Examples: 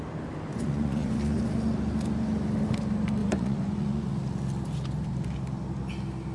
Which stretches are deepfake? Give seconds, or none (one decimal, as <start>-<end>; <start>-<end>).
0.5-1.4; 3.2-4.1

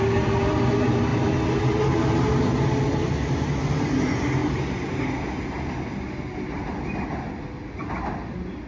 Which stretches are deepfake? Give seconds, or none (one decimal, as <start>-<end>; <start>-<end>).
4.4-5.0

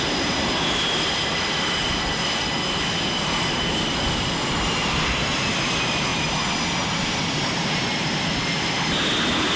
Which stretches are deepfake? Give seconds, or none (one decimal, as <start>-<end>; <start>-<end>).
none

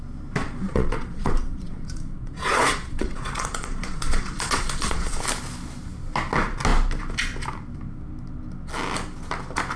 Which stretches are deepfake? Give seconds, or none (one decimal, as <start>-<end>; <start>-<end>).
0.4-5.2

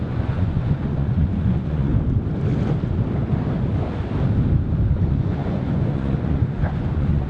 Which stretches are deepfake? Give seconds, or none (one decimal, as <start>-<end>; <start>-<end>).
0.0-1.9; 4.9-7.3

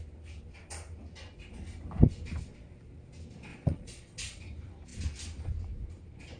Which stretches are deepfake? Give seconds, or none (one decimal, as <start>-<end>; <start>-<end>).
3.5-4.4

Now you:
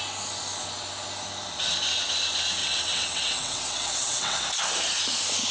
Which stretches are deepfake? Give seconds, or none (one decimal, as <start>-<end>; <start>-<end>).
2.6-4.4

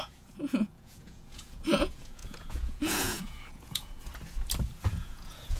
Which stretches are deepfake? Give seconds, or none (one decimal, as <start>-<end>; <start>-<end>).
0.0-4.1; 4.8-5.6